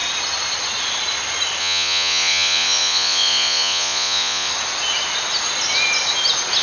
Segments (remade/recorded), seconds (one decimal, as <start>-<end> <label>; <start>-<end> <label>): 0.0-1.6 recorded; 1.6-4.5 remade; 4.5-6.6 recorded